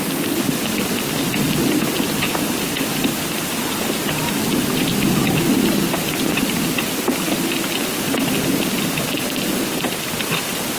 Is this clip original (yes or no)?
yes